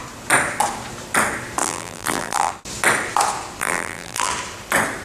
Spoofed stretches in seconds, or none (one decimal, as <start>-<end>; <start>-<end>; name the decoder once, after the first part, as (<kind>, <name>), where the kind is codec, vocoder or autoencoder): 1.6-2.5 (vocoder, BigVGAN v2); 3.6-4.3

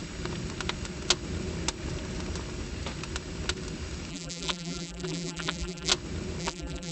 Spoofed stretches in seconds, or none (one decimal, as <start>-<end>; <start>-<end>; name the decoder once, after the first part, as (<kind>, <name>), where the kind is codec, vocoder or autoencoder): 4.1-5.9 (vocoder, BigVGAN v2); 6.4-6.9